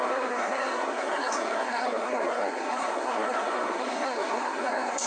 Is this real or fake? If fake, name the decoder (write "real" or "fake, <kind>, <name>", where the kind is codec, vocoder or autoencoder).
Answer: fake, codec, SNAC